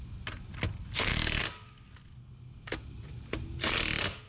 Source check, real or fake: real